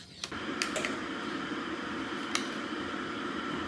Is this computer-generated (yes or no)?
no